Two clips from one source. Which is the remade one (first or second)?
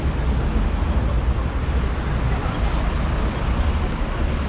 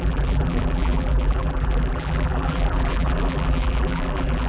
second